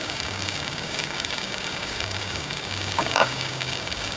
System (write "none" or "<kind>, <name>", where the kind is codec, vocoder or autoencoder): codec, DAC